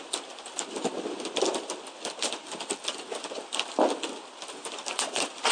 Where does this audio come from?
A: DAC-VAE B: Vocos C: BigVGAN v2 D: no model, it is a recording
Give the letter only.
D